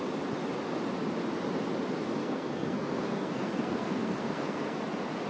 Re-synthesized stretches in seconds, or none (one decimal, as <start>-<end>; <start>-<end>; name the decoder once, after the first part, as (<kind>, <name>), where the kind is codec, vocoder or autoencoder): 2.2-4.8 (codec, SNAC)